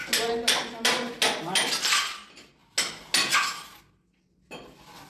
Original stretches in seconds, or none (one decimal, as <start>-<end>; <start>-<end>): 0.0-5.1